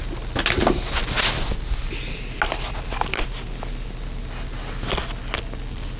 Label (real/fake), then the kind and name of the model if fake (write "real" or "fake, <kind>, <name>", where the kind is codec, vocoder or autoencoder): real